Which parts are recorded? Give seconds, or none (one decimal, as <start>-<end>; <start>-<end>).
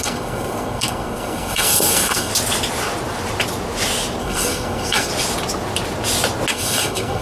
2.3-4.2; 5.1-6.5